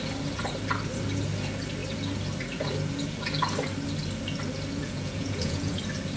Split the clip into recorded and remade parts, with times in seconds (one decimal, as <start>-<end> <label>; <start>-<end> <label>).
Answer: 0.0-4.8 recorded; 4.8-5.8 remade; 5.8-6.2 recorded